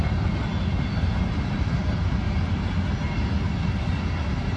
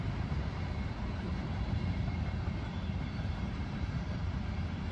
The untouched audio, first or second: first